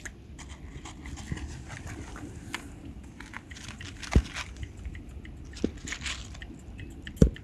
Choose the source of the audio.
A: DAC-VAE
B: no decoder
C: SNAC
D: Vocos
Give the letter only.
B